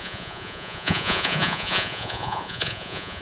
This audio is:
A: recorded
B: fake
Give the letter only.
B